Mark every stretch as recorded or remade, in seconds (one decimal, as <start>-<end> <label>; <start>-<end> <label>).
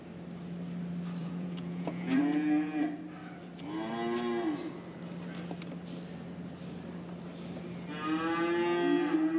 0.0-1.2 recorded; 1.2-2.2 remade; 2.2-9.4 recorded